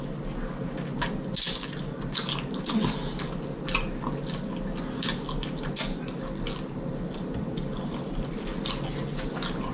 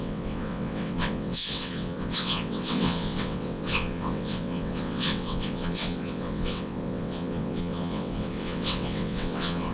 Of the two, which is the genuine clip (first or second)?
first